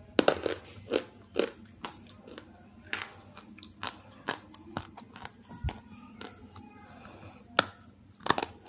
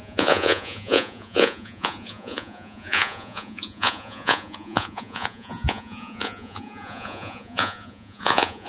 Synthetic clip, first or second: second